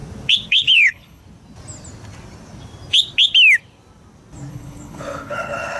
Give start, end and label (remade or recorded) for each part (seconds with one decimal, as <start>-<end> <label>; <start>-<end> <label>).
0.0-0.5 recorded; 0.5-1.2 remade; 1.2-4.5 recorded; 4.5-5.8 remade